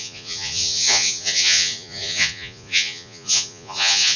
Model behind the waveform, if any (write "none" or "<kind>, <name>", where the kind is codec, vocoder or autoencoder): vocoder, Vocos